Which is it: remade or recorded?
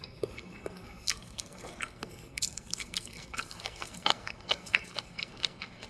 remade